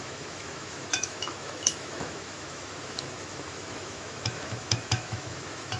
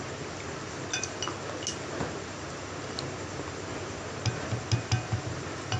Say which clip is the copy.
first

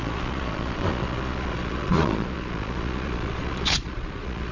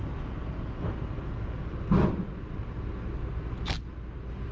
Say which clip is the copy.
first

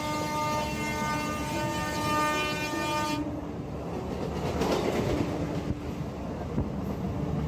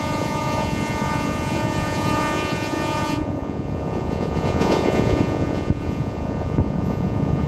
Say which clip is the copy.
second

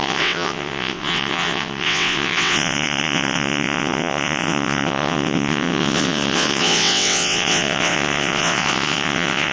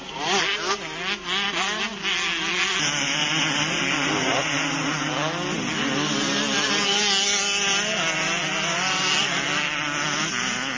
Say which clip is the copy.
first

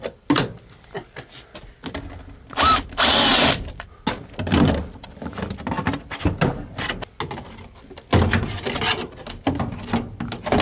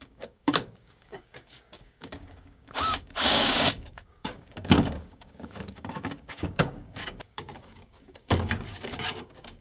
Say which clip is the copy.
second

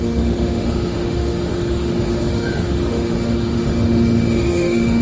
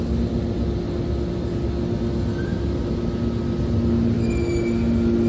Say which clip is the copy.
first